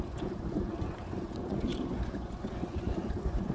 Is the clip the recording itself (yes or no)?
no